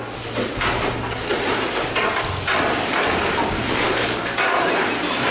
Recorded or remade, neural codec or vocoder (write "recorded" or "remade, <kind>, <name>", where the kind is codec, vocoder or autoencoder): recorded